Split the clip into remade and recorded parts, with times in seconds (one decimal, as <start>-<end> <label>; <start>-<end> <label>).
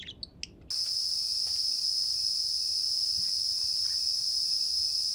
0.0-5.1 recorded